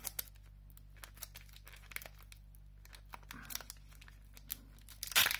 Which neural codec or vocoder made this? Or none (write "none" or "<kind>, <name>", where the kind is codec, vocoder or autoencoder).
none